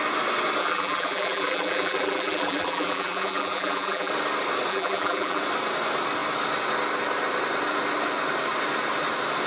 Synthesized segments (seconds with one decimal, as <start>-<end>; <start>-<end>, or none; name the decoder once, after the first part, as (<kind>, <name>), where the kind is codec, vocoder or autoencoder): 0.6-4.1 (vocoder, BigVGAN v2); 4.7-5.4